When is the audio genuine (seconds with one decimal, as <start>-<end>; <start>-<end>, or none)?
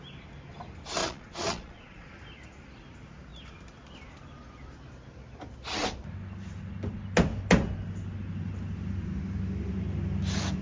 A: 0.0-1.0; 2.1-10.6